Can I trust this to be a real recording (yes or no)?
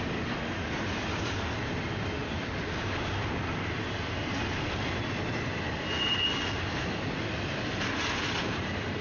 yes